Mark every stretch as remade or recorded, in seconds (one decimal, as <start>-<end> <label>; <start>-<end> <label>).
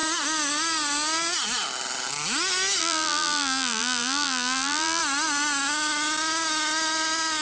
0.0-2.8 recorded; 2.8-5.0 remade; 5.0-7.4 recorded